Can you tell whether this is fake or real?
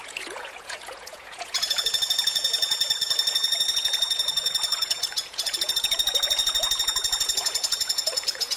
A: fake